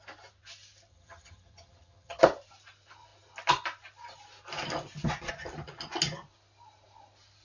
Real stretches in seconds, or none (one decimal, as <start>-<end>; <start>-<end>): 0.0-0.9; 2.2-7.4